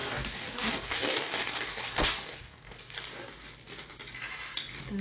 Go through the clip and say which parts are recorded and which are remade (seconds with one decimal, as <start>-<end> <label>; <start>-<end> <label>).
0.0-3.0 remade; 3.0-5.0 recorded